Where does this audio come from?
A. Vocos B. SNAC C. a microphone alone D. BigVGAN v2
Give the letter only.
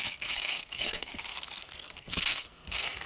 B